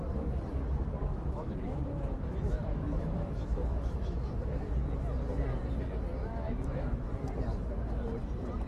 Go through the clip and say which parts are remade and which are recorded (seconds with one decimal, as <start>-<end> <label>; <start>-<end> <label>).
0.0-1.0 recorded; 1.0-4.7 remade; 4.7-6.2 recorded; 6.2-7.1 remade; 7.1-8.7 recorded